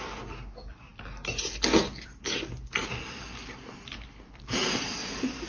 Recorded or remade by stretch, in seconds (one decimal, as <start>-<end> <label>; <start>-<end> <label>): 0.0-4.6 recorded; 4.6-5.5 remade